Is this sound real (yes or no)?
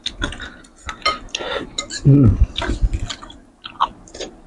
yes